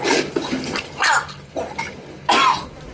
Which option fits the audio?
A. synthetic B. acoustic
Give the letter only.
B